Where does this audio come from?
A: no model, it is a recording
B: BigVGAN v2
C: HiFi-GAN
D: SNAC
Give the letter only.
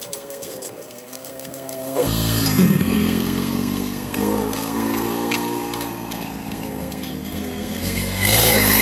D